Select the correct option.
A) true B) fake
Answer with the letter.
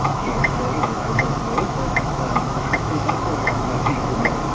B